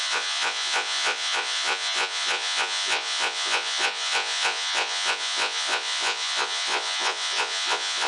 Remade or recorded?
remade